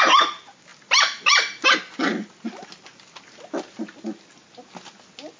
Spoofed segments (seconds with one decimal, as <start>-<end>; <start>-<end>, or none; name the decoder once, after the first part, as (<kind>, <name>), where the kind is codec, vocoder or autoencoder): none